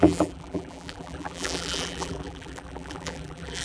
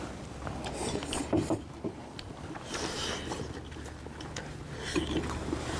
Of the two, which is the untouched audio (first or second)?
second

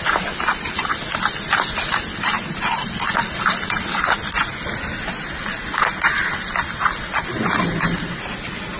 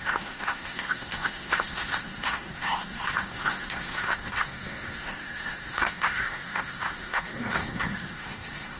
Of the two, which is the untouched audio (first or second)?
first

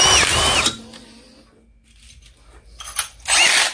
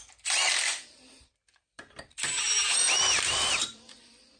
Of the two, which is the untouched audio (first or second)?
first